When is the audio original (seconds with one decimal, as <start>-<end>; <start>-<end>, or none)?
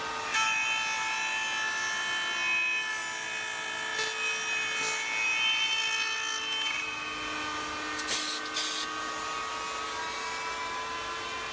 0.0-11.5